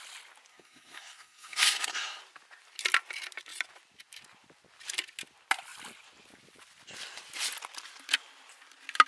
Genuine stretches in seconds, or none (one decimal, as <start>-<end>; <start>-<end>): 0.0-0.5; 2.2-9.1